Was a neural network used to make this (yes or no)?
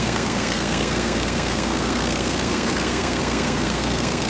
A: yes